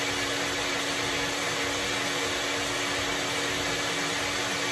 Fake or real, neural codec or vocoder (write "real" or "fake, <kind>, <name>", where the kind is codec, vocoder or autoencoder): real